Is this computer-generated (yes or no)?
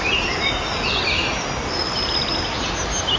no